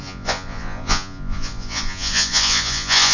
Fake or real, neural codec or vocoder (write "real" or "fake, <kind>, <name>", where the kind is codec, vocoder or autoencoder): fake, vocoder, Vocos